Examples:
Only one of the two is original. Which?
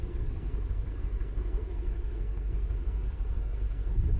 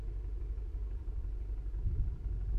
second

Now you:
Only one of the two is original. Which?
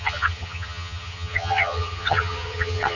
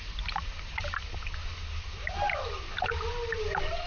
second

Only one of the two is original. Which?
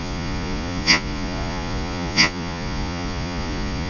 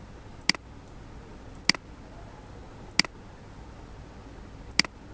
second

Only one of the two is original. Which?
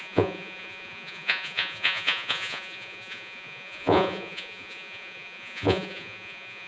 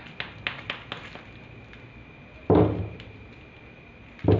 second